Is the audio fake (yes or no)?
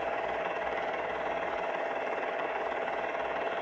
yes